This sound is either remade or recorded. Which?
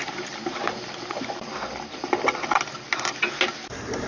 recorded